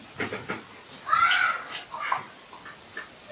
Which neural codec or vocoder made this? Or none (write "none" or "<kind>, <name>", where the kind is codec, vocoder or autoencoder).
none